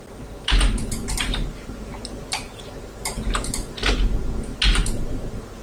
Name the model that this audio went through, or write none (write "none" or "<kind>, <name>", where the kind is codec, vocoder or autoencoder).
none